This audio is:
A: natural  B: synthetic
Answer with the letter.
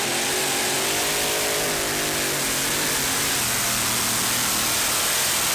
A